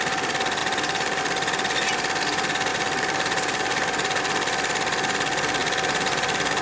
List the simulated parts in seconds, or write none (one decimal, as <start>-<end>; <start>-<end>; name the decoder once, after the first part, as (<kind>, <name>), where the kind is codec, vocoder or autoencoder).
0.6-1.2 (vocoder, BigVGAN v2); 2.7-4.2; 5.6-6.6